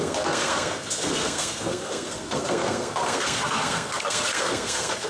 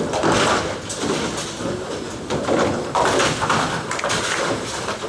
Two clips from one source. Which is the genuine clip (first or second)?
second